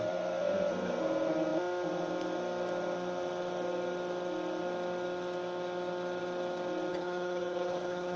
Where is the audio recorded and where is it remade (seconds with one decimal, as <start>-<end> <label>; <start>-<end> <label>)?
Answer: 0.0-6.9 recorded; 6.9-8.2 remade